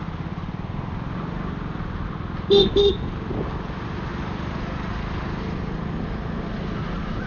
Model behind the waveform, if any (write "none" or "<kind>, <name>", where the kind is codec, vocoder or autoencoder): none